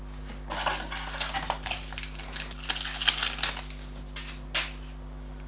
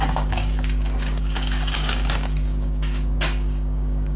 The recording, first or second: first